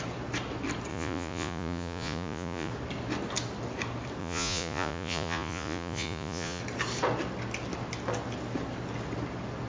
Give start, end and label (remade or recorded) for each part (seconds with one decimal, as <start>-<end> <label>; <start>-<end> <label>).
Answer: 0.0-0.9 recorded; 0.9-2.7 remade; 2.7-4.2 recorded; 4.2-6.6 remade; 6.6-9.7 recorded